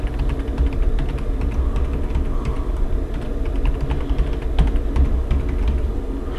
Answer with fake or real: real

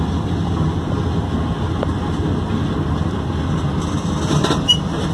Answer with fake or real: real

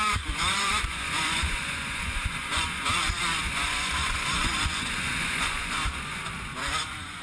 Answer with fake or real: fake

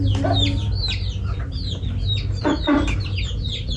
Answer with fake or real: real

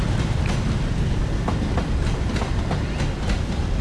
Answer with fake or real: real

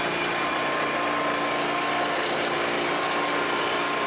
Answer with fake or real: real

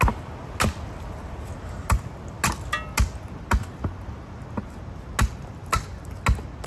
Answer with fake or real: real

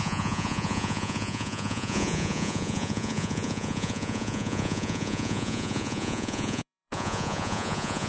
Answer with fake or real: fake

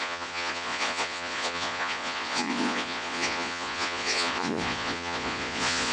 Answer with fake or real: fake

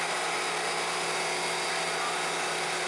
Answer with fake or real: real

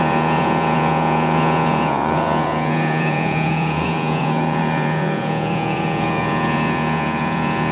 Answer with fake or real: fake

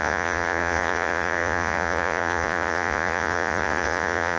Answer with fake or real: fake